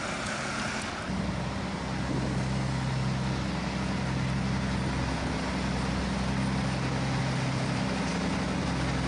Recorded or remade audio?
recorded